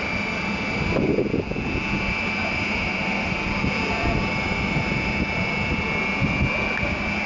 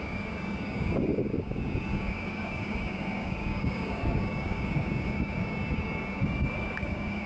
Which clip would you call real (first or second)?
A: first